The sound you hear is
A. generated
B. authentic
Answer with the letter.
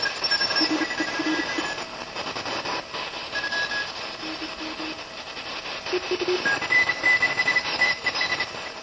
A